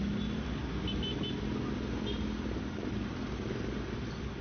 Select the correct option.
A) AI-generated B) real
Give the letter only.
B